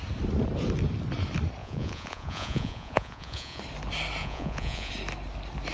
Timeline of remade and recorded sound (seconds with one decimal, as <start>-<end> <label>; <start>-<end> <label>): 0.0-1.6 recorded; 1.6-3.6 remade; 3.6-4.2 recorded; 4.2-4.9 remade; 4.9-5.7 recorded